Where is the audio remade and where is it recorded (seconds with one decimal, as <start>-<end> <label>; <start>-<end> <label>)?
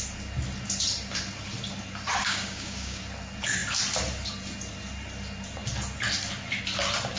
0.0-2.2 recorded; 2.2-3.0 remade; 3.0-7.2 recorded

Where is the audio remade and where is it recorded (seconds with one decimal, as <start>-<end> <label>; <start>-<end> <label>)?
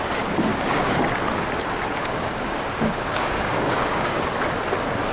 0.0-0.5 recorded; 0.5-1.0 remade; 1.0-2.0 recorded; 2.0-4.2 remade; 4.2-5.1 recorded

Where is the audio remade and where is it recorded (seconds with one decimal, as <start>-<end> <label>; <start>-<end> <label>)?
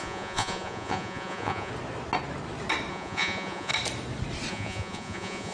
0.0-1.7 remade; 1.7-2.9 recorded; 2.9-3.7 remade; 3.7-4.5 recorded; 4.5-5.5 remade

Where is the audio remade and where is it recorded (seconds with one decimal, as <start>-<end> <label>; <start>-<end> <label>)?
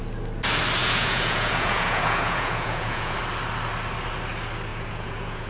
0.0-0.8 recorded; 0.8-3.2 remade; 3.2-4.7 recorded; 4.7-5.5 remade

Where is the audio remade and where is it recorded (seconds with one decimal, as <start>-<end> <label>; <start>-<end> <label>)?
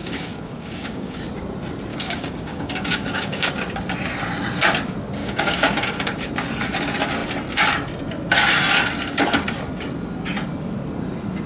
0.0-1.2 remade; 1.2-1.9 recorded; 1.9-3.5 remade; 3.5-5.2 recorded; 5.2-6.3 remade; 6.3-11.5 recorded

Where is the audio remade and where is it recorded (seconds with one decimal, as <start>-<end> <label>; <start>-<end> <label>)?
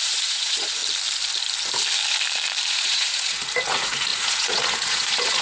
0.0-0.8 remade; 0.8-2.7 recorded; 2.7-5.4 remade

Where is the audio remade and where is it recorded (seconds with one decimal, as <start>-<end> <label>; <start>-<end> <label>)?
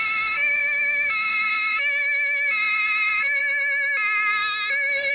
0.0-3.4 remade; 3.4-5.1 recorded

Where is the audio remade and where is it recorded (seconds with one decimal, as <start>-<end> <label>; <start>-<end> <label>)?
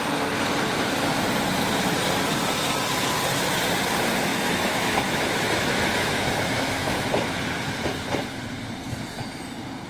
0.0-4.3 recorded; 4.3-7.1 remade; 7.1-9.9 recorded